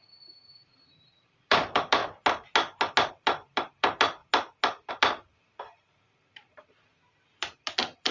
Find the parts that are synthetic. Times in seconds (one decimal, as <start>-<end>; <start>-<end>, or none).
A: 0.0-2.0; 3.1-4.2; 4.9-8.1